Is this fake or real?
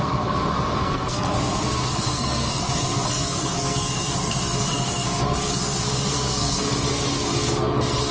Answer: fake